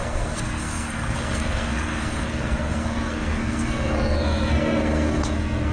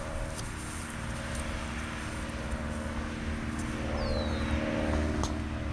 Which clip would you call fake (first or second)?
first